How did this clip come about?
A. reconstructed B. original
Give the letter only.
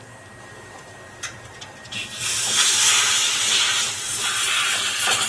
B